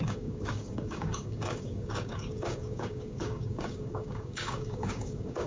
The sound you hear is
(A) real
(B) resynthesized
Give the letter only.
B